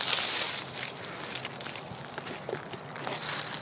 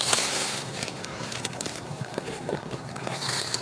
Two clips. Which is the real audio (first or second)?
first